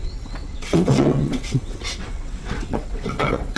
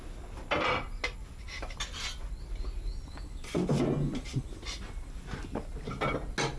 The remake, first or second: first